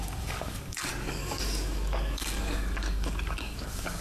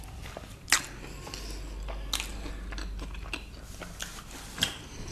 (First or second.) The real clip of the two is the second